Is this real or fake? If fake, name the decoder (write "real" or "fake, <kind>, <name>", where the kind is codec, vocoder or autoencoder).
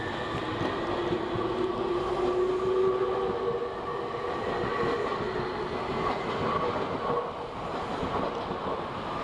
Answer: real